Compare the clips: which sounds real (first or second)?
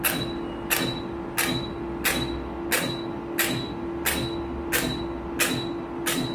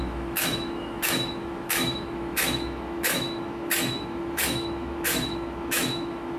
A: first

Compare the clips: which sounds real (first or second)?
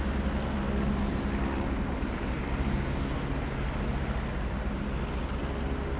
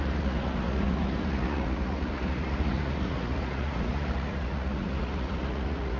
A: first